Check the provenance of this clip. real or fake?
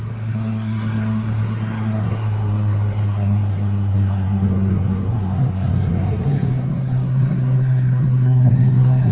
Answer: fake